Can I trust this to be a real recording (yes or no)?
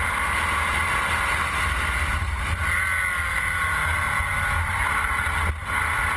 yes